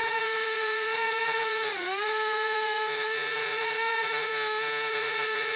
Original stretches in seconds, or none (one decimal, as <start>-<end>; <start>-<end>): 4.3-4.9